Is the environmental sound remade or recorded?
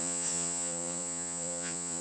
remade